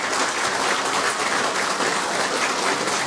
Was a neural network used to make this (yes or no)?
no